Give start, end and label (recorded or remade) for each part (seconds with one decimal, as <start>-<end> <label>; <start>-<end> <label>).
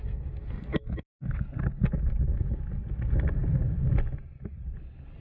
0.0-0.7 recorded; 0.7-1.2 remade; 1.2-5.2 recorded